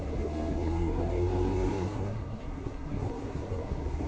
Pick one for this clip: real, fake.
fake